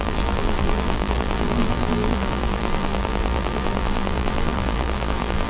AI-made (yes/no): yes